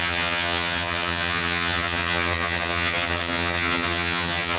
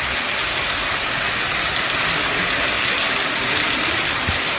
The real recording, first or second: second